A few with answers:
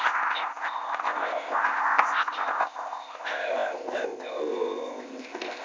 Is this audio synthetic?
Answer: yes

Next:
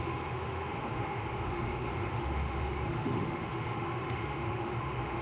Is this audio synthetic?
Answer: yes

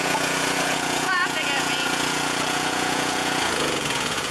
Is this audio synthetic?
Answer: yes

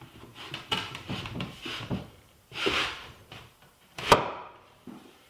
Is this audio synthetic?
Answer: yes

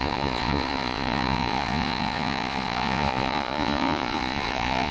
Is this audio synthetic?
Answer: yes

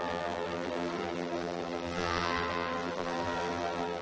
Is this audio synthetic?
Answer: yes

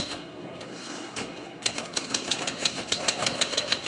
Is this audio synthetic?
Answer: yes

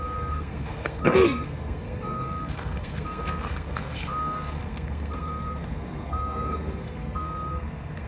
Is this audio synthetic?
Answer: yes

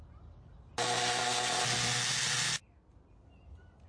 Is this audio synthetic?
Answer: no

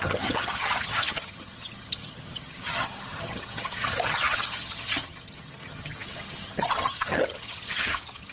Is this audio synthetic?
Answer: yes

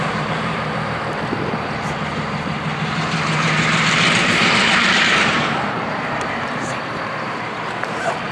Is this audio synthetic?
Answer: yes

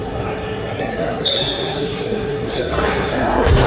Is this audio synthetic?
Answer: yes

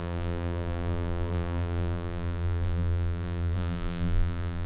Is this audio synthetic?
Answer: yes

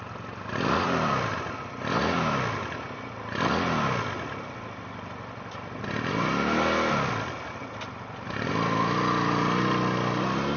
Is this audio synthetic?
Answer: no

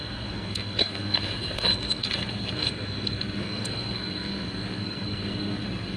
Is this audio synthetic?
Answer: yes